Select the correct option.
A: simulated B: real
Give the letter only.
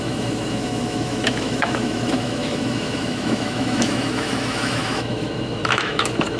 A